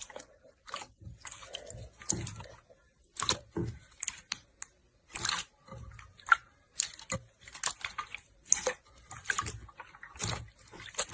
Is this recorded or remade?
recorded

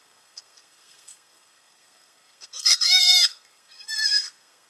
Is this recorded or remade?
remade